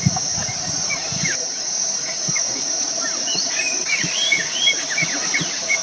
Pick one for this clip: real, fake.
fake